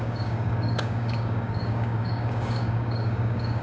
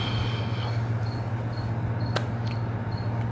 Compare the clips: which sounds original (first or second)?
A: second